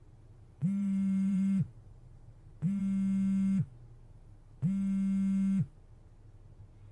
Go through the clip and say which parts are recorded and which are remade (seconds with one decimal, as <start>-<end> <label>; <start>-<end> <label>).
0.0-0.6 recorded; 0.6-2.8 remade; 2.8-6.9 recorded